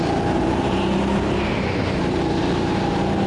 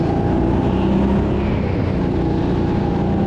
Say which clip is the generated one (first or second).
first